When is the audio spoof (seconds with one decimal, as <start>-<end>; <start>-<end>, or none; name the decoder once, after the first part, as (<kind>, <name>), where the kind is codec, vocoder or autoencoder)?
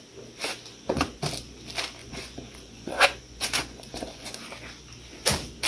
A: 0.7-1.2 (vocoder, Vocos); 2.0-4.4